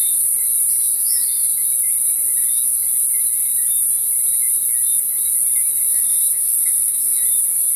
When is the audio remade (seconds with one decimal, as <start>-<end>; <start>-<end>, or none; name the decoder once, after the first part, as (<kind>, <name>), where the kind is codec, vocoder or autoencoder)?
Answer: 5.9-7.2 (codec, SNAC)